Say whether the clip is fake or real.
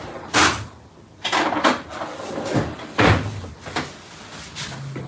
real